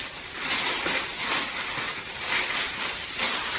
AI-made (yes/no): no